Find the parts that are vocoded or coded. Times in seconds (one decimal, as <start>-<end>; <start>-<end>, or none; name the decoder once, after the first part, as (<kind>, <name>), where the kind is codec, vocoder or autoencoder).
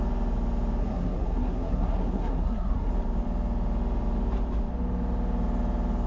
0.8-2.9 (codec, SNAC)